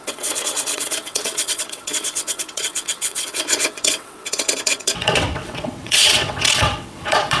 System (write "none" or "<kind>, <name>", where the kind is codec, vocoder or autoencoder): vocoder, WaveNeXt